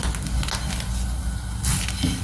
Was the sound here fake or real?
real